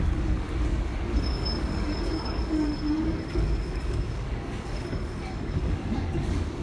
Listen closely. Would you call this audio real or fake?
fake